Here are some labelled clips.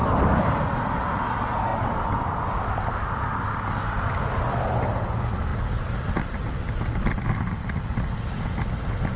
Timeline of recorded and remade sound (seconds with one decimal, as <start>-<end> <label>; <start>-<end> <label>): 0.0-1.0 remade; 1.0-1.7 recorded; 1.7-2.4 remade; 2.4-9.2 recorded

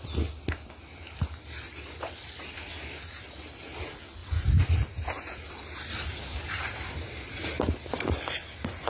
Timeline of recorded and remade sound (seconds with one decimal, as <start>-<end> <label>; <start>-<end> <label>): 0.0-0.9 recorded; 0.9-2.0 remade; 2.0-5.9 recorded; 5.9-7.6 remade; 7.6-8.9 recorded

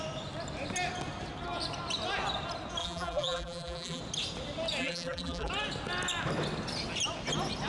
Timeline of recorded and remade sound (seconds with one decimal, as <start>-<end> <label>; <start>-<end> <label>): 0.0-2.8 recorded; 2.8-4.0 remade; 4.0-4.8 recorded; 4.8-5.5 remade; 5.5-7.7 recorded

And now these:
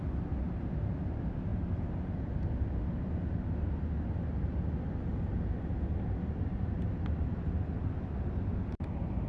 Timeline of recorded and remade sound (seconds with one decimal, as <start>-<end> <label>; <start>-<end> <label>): 0.0-9.3 recorded

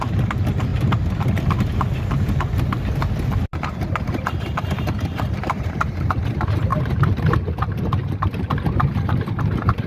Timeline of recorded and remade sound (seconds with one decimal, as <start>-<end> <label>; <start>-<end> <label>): 0.0-0.7 remade; 0.7-3.4 recorded; 3.4-9.9 remade

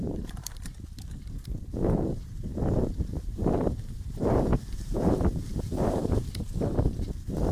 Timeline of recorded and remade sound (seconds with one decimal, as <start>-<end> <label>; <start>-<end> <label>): 0.0-0.7 remade; 0.7-1.6 recorded; 1.6-7.5 remade

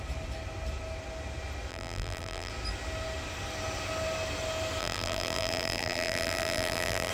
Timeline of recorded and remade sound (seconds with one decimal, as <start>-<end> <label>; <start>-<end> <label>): 0.0-1.7 recorded; 1.7-2.5 remade; 2.5-4.8 recorded; 4.8-7.1 remade